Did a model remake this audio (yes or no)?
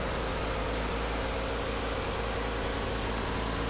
no